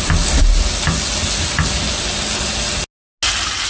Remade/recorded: recorded